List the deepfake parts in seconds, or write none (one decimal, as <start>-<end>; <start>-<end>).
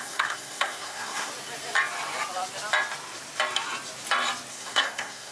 0.0-1.3; 4.5-5.3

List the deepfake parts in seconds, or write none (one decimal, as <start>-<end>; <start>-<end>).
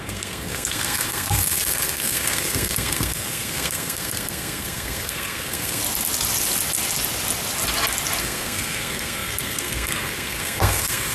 0.0-5.8; 8.2-11.1